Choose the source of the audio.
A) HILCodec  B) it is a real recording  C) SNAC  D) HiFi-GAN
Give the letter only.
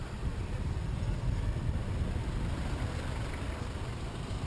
B